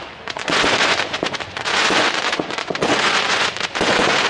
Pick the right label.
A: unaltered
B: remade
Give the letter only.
B